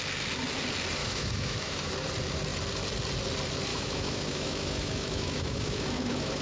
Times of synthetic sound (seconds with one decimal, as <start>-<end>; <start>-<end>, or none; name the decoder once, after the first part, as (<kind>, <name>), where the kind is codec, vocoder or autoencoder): 1.0-1.9 (autoencoder, DAC-VAE); 3.7-6.4